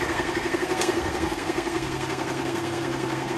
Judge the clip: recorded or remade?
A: remade